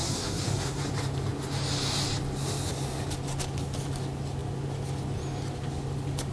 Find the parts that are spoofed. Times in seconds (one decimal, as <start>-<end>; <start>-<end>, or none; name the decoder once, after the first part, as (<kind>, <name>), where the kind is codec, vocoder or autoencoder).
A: 0.0-0.8 (codec, SNAC)